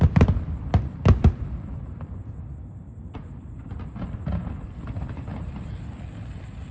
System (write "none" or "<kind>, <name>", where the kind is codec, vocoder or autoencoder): none